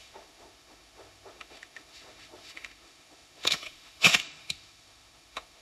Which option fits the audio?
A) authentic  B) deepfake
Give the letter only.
B